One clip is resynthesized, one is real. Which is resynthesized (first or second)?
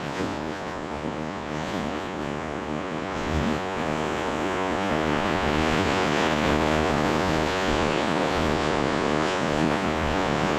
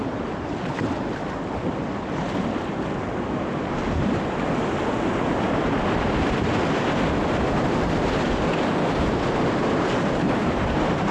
first